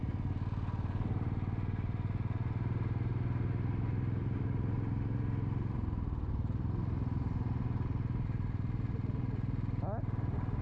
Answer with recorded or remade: recorded